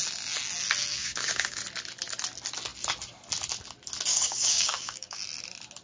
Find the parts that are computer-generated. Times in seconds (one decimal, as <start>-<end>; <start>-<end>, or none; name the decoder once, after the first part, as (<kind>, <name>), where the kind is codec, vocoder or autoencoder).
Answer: 0.9-1.6 (codec, DAC); 4.1-5.2